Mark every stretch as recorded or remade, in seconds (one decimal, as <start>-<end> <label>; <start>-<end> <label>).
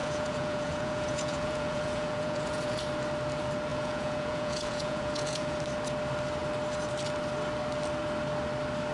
0.0-2.8 remade; 2.8-3.7 recorded; 3.7-5.6 remade; 5.6-8.9 recorded